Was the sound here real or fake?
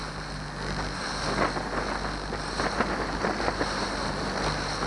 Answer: real